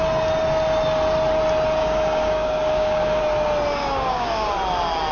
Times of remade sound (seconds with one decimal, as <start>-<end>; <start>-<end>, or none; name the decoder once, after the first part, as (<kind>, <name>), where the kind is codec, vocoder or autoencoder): 1.8-3.2 (codec, DAC); 3.8-4.5